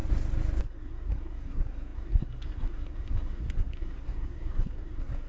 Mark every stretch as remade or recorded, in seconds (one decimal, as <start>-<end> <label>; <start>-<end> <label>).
0.0-0.6 recorded; 0.6-5.3 remade